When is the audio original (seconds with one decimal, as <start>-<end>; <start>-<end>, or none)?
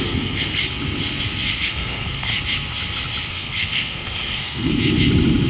0.6-1.5; 2.3-3.3; 4.7-5.5